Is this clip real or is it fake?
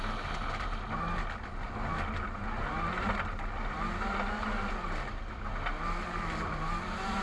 real